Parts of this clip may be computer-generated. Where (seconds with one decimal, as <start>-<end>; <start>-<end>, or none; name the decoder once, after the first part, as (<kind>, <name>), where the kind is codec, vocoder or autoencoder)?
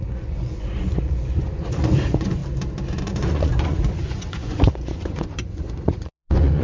0.0-2.4 (vocoder, Vocos); 3.0-6.6